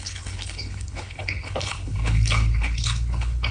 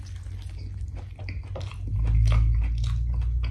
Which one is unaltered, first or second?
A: second